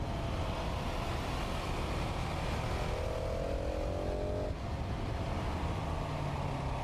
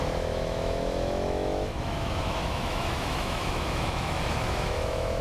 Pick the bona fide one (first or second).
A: first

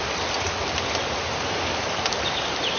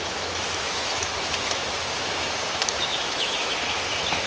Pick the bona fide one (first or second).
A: first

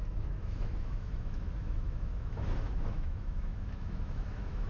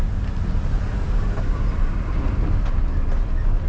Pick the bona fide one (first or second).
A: second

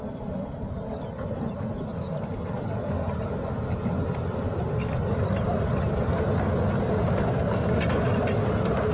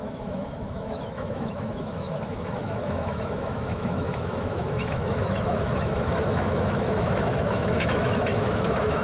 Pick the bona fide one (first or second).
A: first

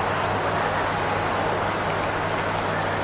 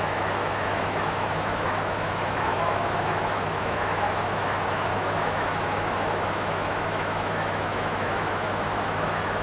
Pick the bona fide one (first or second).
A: first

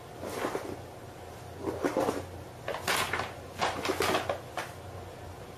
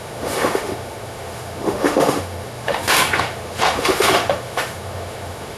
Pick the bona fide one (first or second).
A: first